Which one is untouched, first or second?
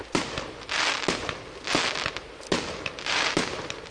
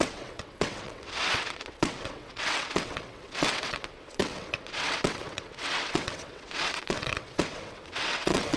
first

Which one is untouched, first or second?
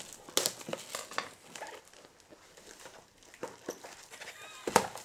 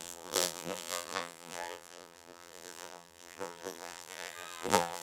first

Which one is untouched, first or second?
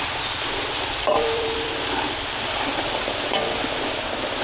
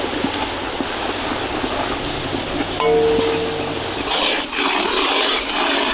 second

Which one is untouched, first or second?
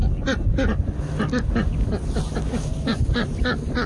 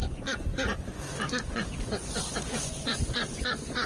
first